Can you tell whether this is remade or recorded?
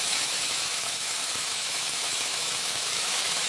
remade